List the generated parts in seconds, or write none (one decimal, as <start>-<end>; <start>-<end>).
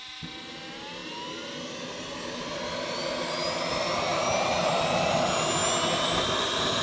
none